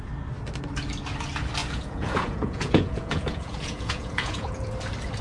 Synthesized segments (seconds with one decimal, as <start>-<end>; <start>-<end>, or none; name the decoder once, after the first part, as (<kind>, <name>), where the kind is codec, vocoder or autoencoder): 1.6-4.7 (vocoder, Vocos)